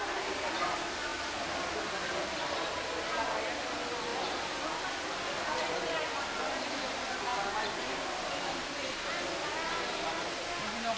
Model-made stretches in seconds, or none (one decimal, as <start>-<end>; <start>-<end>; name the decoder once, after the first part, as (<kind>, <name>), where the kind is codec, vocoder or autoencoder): none